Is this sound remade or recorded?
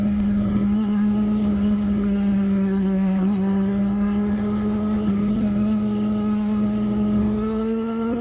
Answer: remade